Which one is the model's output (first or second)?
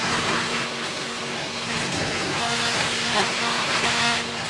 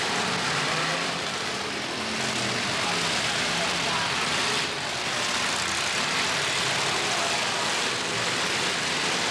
first